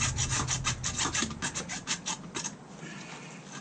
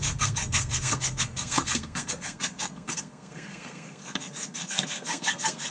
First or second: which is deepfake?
second